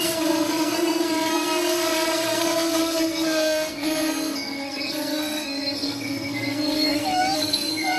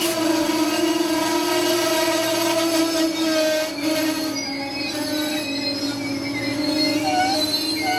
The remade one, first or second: first